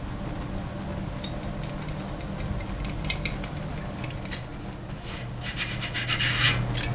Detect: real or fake real